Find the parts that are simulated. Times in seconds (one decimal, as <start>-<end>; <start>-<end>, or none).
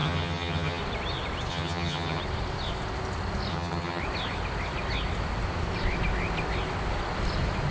0.0-0.8; 1.5-2.2; 3.5-4.0